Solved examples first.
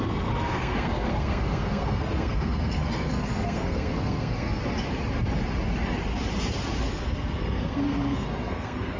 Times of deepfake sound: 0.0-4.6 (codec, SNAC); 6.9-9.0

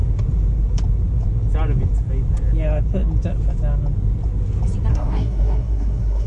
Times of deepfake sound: 4.9-6.3 (codec, SNAC)

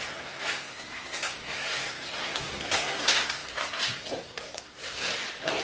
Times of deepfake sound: 0.0-5.1 (codec, SNAC)